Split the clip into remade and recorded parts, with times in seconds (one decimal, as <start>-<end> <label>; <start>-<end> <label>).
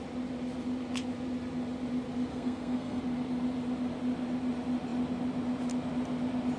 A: 0.0-2.3 recorded; 2.3-3.0 remade; 3.0-6.6 recorded